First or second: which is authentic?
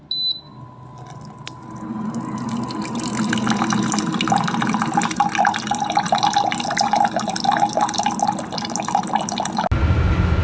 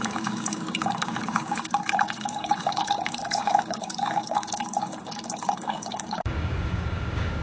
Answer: first